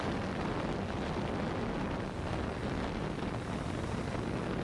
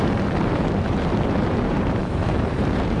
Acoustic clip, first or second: first